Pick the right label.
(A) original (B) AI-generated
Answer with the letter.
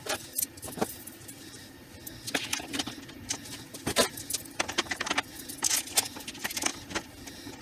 A